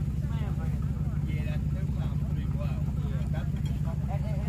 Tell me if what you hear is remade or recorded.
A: recorded